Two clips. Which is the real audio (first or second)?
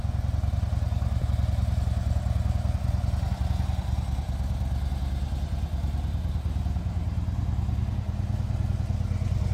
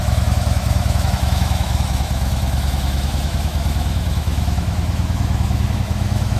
first